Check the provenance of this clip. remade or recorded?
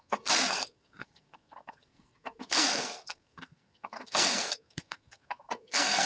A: remade